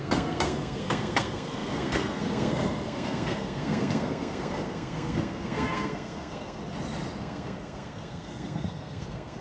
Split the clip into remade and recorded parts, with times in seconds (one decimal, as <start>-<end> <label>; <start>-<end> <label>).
0.0-6.6 remade; 6.6-7.2 recorded; 7.2-9.4 remade